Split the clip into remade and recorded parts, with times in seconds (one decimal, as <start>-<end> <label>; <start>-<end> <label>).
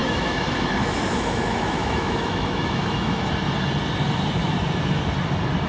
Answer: 0.0-3.3 remade; 3.3-5.7 recorded